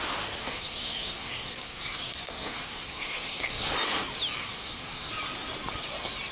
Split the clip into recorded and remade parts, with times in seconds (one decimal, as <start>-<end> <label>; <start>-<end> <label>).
0.0-0.4 recorded; 0.4-3.7 remade; 3.7-4.4 recorded; 4.4-5.1 remade; 5.1-6.3 recorded